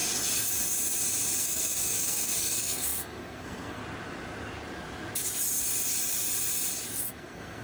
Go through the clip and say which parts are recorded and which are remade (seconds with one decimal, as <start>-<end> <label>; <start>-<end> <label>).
0.0-1.4 recorded; 1.4-3.8 remade; 3.8-6.9 recorded; 6.9-7.6 remade